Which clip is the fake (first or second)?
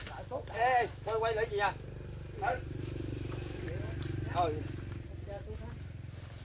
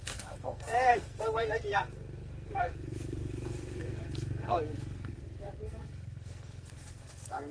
second